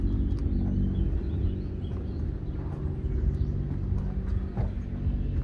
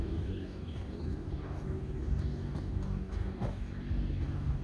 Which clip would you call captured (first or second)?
first